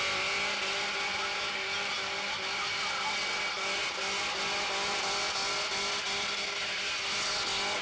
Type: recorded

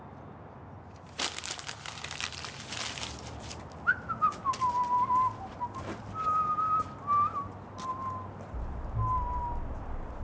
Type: recorded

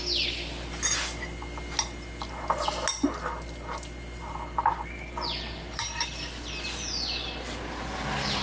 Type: recorded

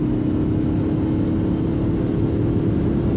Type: recorded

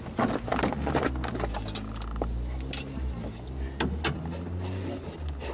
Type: recorded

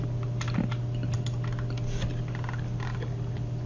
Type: recorded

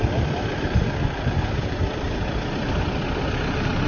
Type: recorded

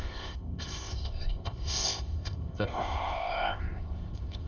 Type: remade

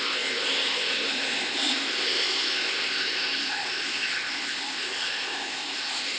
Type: remade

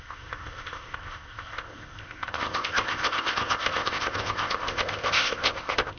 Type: remade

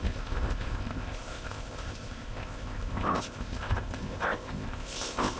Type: remade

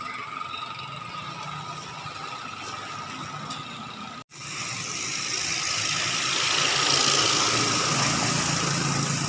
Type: recorded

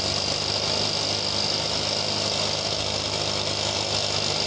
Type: recorded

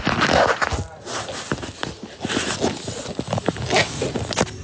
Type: recorded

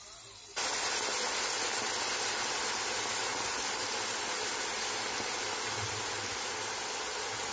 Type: recorded